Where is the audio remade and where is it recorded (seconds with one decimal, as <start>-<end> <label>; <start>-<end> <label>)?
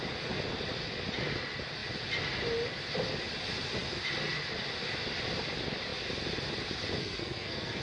0.0-7.0 recorded; 7.0-7.8 remade